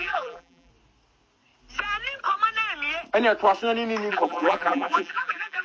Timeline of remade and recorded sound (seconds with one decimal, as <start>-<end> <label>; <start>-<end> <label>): 0.0-0.7 remade; 0.7-4.1 recorded; 4.1-5.6 remade